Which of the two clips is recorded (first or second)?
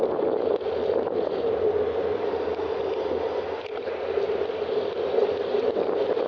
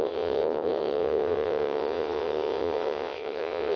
first